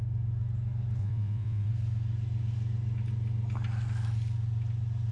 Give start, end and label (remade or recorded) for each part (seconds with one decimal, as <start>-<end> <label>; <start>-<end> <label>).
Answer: 0.0-1.0 recorded; 1.0-1.7 remade; 1.7-5.1 recorded